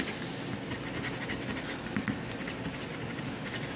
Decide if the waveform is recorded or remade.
recorded